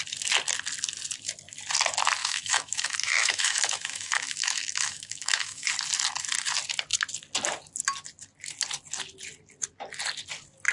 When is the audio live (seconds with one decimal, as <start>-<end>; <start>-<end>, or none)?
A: 0.0-2.2; 5.7-10.7